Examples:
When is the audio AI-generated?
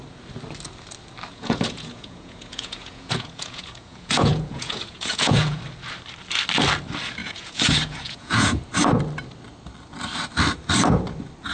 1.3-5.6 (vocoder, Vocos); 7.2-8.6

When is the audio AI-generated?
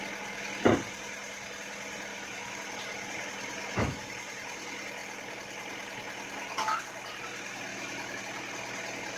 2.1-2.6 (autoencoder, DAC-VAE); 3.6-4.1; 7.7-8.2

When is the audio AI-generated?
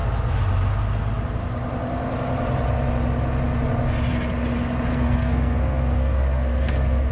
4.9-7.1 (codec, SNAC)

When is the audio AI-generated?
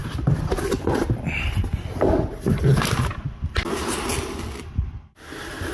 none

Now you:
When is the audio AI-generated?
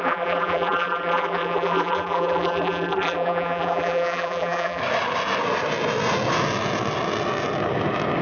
0.0-4.8 (vocoder, BigVGAN v2)